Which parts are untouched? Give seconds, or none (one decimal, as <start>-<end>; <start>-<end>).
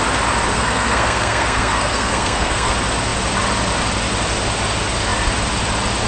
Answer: 0.0-0.5; 2.7-6.1